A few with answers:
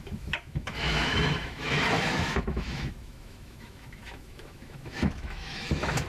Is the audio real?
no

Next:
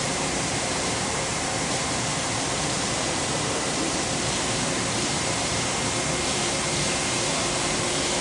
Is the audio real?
no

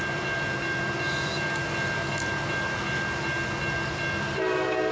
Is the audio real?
yes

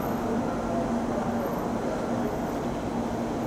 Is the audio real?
yes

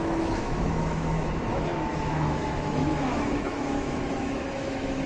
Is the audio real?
no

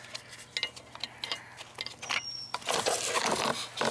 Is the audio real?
yes